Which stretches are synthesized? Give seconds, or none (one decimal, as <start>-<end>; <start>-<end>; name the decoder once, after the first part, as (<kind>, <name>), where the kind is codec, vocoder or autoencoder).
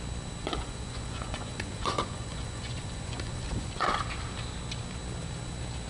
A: 0.4-3.9 (vocoder, Vocos)